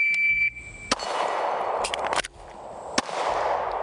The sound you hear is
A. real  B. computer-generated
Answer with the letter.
A